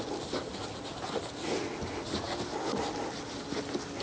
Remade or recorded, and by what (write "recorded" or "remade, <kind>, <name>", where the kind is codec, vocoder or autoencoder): recorded